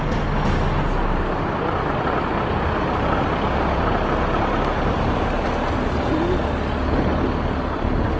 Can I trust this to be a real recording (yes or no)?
yes